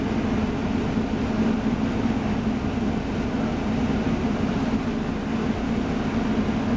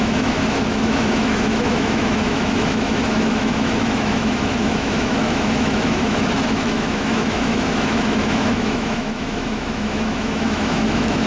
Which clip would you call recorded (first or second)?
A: first